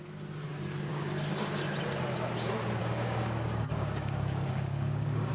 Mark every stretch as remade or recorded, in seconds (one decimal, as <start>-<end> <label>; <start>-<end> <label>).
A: 0.0-0.9 recorded; 0.9-1.6 remade; 1.6-2.8 recorded; 2.8-5.3 remade